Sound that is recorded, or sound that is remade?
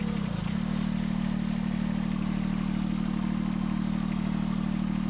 recorded